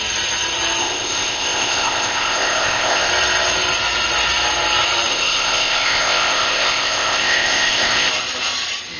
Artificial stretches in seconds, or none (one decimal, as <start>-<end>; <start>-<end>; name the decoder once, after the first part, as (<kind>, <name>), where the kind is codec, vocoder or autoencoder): 0.8-3.1 (codec, ZipCodec); 5.1-8.1